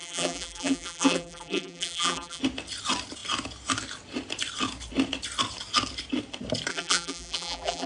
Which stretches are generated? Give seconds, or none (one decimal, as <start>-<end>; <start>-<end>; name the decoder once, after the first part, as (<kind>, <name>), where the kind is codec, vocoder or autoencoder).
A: 0.0-2.4 (vocoder, BigVGAN v2); 6.7-7.9